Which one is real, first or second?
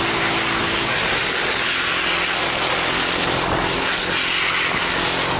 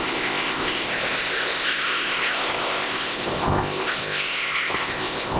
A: first